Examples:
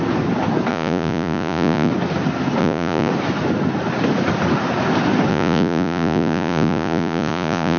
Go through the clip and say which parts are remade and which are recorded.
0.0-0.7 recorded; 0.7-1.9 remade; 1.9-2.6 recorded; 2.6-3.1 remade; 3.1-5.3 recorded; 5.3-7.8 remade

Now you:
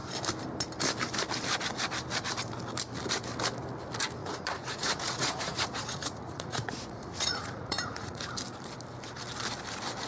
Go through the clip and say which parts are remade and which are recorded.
0.0-4.2 recorded; 4.2-8.3 remade; 8.3-10.1 recorded

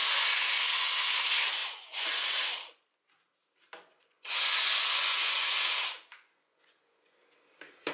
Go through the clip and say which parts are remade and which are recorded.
0.0-0.9 remade; 0.9-1.6 recorded; 1.6-2.3 remade; 2.3-3.9 recorded; 3.9-7.2 remade; 7.2-7.9 recorded